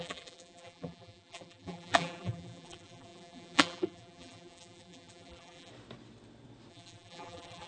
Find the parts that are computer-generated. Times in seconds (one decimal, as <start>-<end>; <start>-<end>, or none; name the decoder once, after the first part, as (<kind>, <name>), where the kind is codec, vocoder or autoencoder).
0.0-5.7 (vocoder, BigVGAN v2); 6.7-7.7